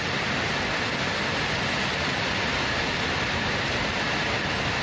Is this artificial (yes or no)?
no